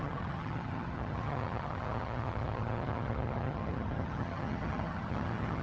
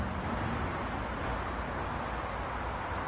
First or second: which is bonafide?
second